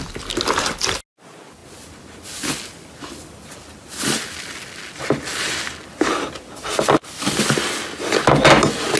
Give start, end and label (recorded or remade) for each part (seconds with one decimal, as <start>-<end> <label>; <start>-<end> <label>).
0.0-9.0 recorded